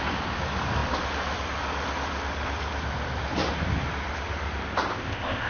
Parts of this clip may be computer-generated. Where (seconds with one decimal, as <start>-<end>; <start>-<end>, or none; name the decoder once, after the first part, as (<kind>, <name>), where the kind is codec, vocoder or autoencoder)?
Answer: 4.9-5.5 (codec, ZipCodec)